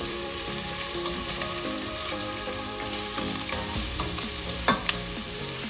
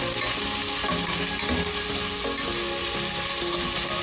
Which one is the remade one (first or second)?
first